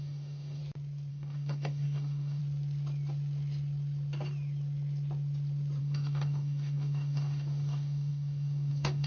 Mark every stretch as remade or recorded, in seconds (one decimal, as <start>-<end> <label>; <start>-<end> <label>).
0.0-0.6 remade; 0.6-1.1 recorded; 1.1-2.4 remade; 2.4-5.8 recorded; 5.8-9.1 remade